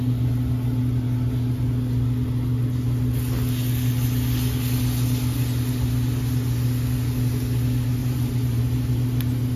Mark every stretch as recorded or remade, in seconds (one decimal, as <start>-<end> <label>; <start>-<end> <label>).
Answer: 0.0-8.0 recorded; 8.0-8.6 remade; 8.6-9.6 recorded